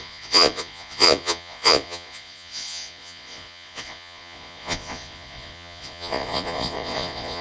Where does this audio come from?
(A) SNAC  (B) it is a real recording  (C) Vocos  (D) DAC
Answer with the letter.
C